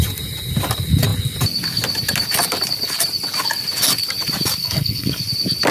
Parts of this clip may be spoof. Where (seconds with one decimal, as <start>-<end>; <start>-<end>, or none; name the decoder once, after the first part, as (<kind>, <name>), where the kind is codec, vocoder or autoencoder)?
4.6-5.2 (codec, SNAC)